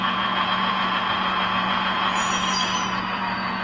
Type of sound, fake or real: fake